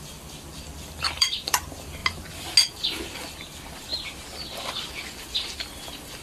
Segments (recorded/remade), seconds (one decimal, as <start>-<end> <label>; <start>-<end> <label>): 0.0-2.0 remade; 2.0-2.7 recorded; 2.7-3.9 remade; 3.9-4.7 recorded; 4.7-6.2 remade